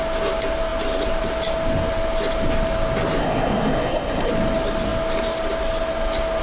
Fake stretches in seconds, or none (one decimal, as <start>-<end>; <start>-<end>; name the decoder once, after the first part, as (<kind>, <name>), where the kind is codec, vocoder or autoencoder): 3.2-4.3 (codec, SNAC)